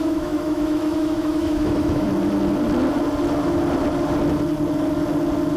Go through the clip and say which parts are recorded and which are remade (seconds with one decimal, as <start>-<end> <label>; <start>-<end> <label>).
0.0-2.1 remade; 2.1-5.6 recorded